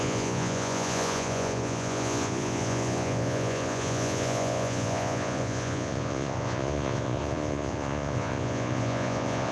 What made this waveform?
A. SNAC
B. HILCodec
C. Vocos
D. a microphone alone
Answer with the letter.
C